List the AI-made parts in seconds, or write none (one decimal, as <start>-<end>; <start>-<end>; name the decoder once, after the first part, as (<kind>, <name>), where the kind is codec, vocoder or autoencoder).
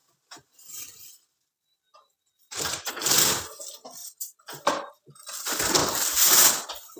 0.0-2.9 (vocoder, BigVGAN v2); 4.0-4.9